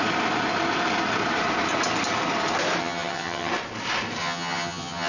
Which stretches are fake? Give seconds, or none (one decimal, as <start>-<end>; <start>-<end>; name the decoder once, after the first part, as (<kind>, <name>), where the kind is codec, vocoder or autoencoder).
2.8-3.5 (vocoder, HiFi-GAN); 4.2-5.1